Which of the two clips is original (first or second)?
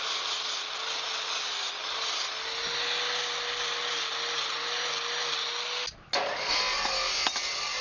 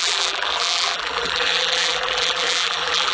first